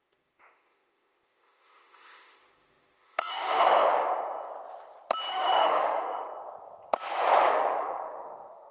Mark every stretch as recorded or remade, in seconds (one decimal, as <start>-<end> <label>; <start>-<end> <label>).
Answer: 0.0-4.1 remade; 4.1-5.3 recorded; 5.3-6.3 remade; 6.3-7.5 recorded; 7.5-8.7 remade